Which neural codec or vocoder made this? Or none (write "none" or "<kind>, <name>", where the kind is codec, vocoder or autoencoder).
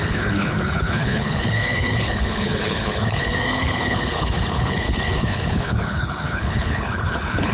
codec, HILCodec